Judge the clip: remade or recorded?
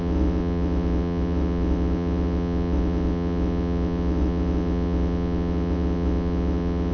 remade